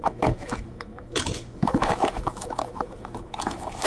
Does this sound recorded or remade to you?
remade